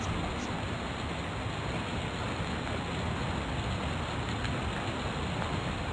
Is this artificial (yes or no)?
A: no